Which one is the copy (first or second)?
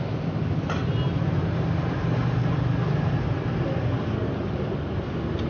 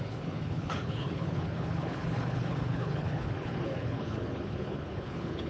second